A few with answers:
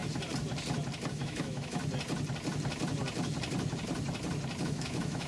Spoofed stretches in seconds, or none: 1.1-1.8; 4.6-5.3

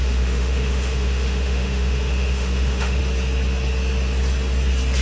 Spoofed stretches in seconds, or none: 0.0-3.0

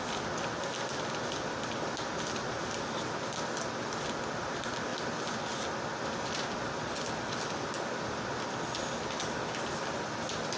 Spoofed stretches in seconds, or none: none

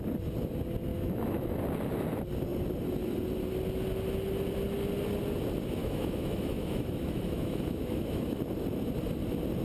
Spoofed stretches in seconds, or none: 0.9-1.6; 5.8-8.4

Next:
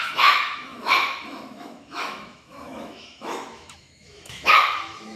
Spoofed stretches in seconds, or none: 0.0-5.2